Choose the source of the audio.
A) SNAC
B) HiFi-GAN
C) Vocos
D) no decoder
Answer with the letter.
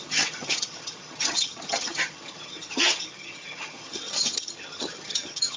B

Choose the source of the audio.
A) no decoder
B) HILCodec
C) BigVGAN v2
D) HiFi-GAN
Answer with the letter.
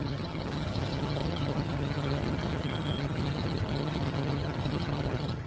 D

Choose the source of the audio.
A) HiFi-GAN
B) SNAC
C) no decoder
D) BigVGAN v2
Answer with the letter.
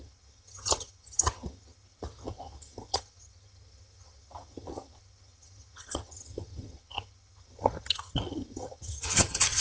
A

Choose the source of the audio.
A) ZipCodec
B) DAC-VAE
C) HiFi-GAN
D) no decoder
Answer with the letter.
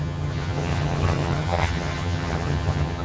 C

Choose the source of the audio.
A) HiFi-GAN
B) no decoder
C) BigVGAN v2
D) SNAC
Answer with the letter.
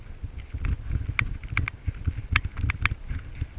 B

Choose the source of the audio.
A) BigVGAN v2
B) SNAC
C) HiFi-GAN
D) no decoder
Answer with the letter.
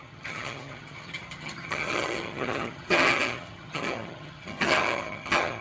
C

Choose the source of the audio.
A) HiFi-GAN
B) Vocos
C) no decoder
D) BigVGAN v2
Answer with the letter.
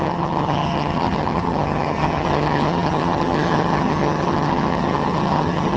A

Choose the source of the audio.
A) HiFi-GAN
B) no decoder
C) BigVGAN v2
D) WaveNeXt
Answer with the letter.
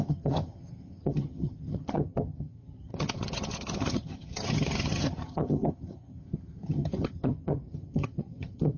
A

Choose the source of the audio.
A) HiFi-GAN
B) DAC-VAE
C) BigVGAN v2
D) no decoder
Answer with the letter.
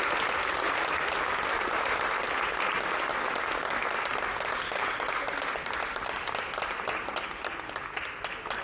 D